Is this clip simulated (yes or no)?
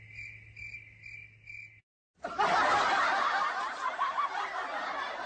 no